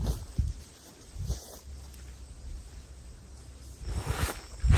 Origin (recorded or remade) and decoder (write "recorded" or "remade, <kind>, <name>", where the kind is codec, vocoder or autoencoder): recorded